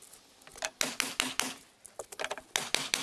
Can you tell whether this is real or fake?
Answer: real